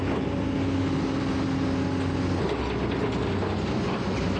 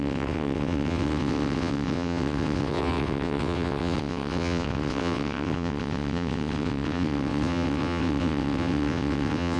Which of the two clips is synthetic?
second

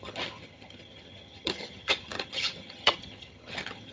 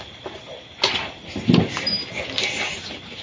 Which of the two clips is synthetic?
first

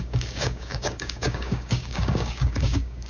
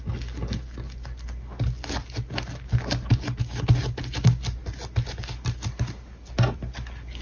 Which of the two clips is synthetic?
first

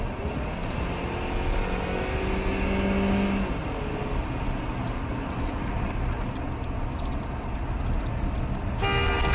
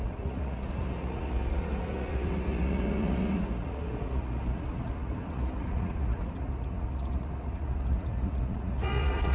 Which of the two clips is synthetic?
second